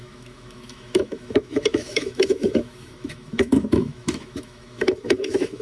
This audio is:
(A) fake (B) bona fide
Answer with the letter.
A